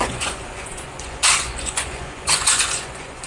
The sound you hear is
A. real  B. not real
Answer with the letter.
B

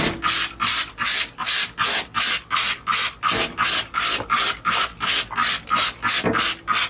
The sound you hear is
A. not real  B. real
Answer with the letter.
B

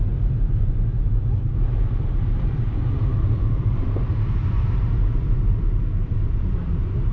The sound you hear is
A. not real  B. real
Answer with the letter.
A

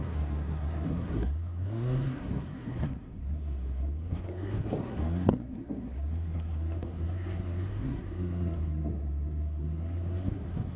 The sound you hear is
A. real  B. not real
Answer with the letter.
B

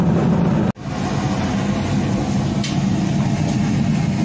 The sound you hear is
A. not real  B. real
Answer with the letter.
B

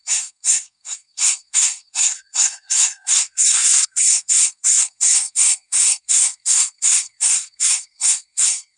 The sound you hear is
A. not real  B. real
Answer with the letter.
A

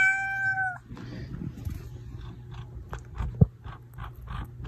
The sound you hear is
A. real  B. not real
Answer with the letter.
A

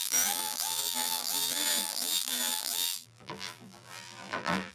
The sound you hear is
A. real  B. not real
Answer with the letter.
B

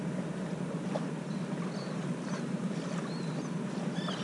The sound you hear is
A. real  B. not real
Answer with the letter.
A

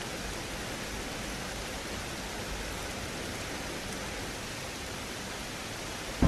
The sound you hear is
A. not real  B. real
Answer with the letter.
B